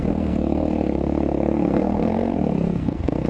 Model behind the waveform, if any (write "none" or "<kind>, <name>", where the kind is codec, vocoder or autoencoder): codec, SNAC